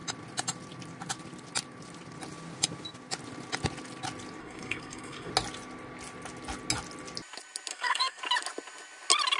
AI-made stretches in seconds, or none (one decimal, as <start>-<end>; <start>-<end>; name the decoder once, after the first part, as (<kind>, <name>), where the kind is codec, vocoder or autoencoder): 4.4-5.3 (codec, SNAC); 7.7-8.2